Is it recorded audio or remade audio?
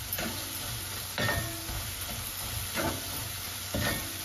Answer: recorded